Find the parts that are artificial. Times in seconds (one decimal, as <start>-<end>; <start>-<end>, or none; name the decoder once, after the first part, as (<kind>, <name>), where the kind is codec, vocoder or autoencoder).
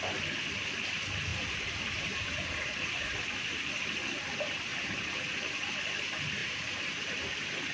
1.3-3.2 (vocoder, BigVGAN v2); 4.7-5.5; 6.4-7.3